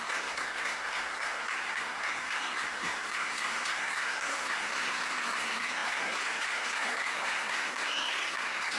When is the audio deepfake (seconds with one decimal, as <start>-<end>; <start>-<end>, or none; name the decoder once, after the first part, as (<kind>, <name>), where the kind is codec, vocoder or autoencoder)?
0.0-8.8 (codec, SNAC)